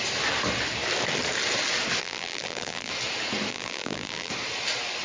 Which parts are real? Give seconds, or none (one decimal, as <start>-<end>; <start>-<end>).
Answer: 0.0-2.0; 2.9-3.5; 4.3-5.0